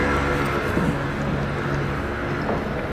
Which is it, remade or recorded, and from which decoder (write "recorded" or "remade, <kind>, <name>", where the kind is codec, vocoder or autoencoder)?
recorded